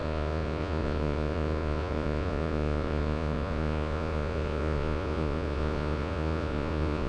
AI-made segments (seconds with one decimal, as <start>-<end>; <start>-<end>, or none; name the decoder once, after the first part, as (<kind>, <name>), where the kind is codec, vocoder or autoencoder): 0.0-7.1 (vocoder, Vocos)